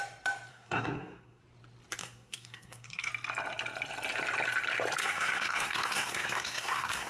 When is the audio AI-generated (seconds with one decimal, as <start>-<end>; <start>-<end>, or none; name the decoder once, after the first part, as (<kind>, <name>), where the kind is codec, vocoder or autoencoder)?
0.5-1.4 (codec, SNAC); 2.0-3.1; 5.0-7.1